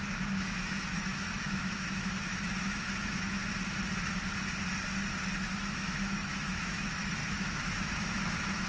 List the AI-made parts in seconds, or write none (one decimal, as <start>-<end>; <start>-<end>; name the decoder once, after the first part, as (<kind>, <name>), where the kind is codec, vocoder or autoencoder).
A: 0.0-3.4 (autoencoder, DAC-VAE); 5.4-8.7